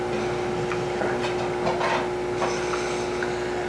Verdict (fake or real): real